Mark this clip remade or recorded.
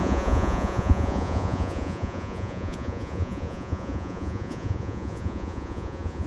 remade